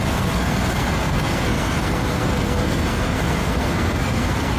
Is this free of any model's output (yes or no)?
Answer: no